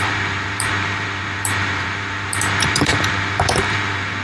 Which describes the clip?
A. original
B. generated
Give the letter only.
B